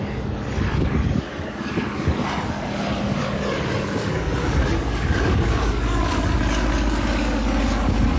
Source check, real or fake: fake